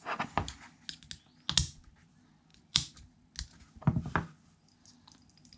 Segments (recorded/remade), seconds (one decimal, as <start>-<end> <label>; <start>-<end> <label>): 0.0-2.5 recorded; 2.5-3.3 remade; 3.3-5.6 recorded